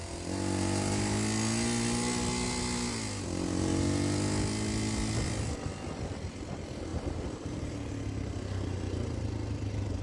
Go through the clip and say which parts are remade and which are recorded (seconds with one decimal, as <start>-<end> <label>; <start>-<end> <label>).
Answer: 0.0-6.9 recorded; 6.9-7.7 remade; 7.7-10.0 recorded

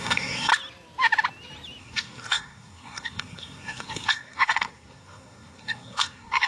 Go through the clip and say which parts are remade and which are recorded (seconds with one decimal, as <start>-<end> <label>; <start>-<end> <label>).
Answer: 0.0-0.5 remade; 0.5-1.8 recorded; 1.8-6.5 remade

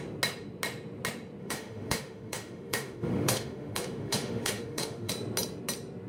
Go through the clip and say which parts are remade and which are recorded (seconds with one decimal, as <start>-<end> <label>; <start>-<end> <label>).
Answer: 0.0-1.4 recorded; 1.4-5.1 remade; 5.1-6.1 recorded

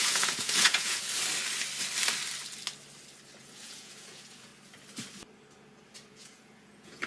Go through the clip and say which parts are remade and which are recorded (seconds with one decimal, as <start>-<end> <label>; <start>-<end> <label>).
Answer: 0.0-1.0 remade; 1.0-3.4 recorded; 3.4-4.5 remade; 4.5-6.1 recorded; 6.1-7.1 remade

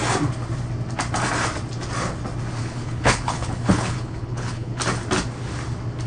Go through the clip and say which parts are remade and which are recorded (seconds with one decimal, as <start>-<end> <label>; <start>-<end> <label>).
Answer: 0.0-2.6 recorded; 2.6-4.8 remade; 4.8-6.1 recorded

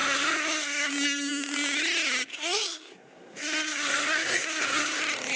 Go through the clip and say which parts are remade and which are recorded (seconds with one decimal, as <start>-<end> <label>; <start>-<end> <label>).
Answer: 0.0-0.9 remade; 0.9-2.3 recorded; 2.3-5.0 remade; 5.0-5.4 recorded

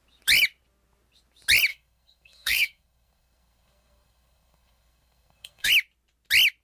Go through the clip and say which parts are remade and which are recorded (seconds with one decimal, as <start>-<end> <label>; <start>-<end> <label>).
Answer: 0.0-1.7 recorded; 1.7-5.7 remade; 5.7-6.6 recorded

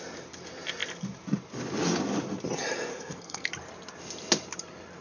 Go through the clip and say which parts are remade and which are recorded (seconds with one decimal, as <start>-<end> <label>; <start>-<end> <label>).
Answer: 0.0-2.9 recorded; 2.9-3.5 remade; 3.5-5.0 recorded